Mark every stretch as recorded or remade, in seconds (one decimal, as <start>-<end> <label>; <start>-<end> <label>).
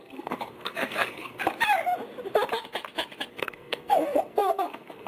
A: 0.0-1.4 remade; 1.4-3.3 recorded; 3.3-5.1 remade